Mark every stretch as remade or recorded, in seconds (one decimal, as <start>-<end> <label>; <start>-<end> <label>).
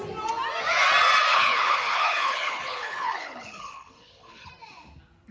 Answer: 0.0-1.3 recorded; 1.3-4.5 remade; 4.5-5.3 recorded